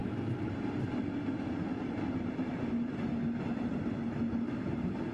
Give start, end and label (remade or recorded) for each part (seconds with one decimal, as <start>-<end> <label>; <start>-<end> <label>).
0.0-1.7 recorded; 1.7-2.7 remade; 2.7-5.1 recorded